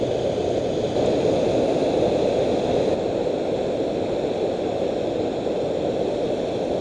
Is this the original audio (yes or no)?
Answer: yes